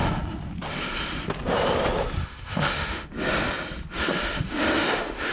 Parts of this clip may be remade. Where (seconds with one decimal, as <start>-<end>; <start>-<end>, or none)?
2.2-3.1; 4.0-5.3